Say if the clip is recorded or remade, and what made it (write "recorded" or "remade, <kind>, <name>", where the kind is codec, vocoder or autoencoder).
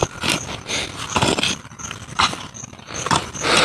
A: recorded